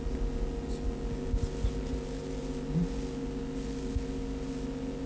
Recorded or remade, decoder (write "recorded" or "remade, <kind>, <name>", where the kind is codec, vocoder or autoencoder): recorded